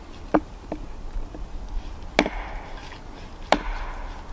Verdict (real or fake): real